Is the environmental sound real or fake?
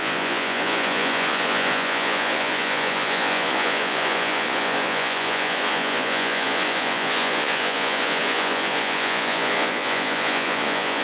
fake